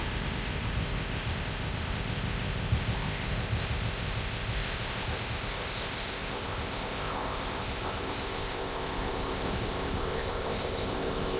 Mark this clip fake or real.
fake